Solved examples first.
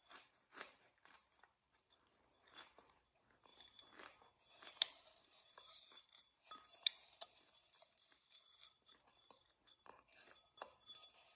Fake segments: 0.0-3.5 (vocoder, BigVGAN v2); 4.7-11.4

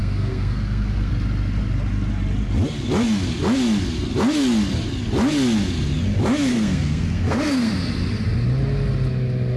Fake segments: 0.0-1.1 (codec, SNAC); 6.5-7.7